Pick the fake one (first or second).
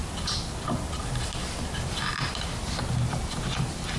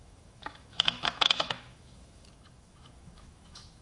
second